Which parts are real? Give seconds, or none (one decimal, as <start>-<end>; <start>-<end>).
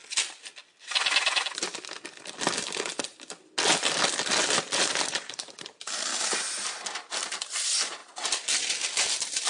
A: 0.0-4.4; 6.1-7.2; 8.0-8.6